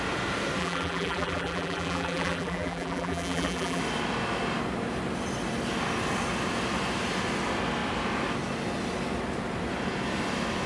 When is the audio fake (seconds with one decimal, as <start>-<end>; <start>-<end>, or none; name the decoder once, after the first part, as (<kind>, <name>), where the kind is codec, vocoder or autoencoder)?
0.6-3.8 (vocoder, BigVGAN v2)